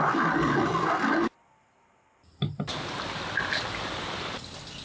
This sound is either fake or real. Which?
real